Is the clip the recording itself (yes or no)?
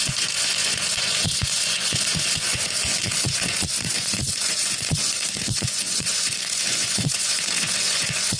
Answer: no